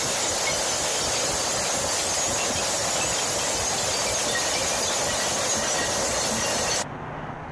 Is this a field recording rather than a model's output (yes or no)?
yes